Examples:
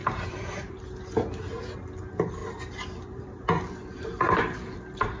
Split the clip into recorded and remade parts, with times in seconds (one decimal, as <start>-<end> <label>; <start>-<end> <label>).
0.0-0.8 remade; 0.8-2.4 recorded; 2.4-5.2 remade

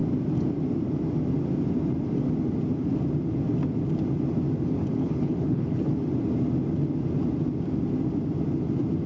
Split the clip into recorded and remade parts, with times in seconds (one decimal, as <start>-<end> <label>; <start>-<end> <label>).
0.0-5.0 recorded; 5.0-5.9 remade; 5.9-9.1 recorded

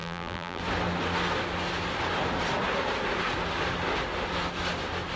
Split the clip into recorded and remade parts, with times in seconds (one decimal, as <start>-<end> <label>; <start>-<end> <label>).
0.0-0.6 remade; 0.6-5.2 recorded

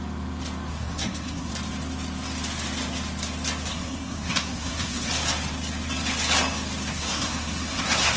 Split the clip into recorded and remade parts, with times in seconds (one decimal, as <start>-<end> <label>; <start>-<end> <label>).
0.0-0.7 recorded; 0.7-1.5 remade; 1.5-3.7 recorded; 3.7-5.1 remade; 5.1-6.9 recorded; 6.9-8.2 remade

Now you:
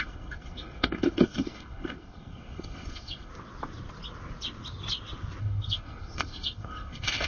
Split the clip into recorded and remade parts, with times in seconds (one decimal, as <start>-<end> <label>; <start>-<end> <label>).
0.0-3.3 remade; 3.3-5.4 recorded; 5.4-7.3 remade

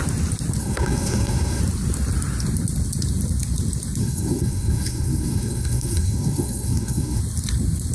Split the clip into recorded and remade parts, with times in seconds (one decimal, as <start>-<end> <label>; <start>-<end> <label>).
0.0-0.6 recorded; 0.6-1.6 remade; 1.6-4.0 recorded; 4.0-7.2 remade; 7.2-7.9 recorded

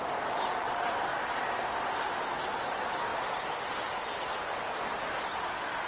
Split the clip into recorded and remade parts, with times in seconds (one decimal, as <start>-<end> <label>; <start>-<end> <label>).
0.0-5.9 recorded

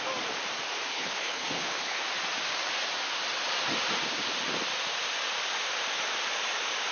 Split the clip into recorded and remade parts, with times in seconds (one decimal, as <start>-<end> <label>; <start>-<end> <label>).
0.0-0.9 recorded; 0.9-2.0 remade; 2.0-6.9 recorded